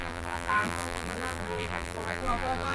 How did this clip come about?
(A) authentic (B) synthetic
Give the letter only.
B